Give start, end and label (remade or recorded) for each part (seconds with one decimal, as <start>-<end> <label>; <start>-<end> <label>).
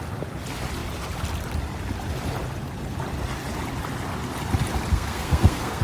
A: 0.0-4.9 recorded; 4.9-5.8 remade